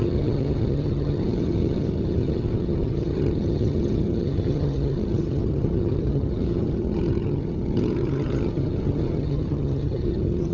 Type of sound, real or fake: fake